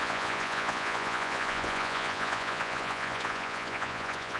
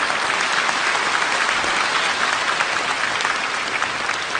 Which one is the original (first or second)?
second